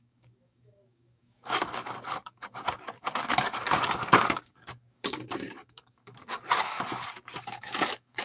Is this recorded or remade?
remade